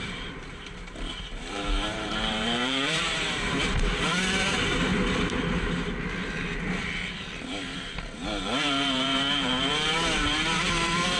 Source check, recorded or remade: remade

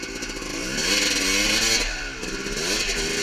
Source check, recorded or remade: recorded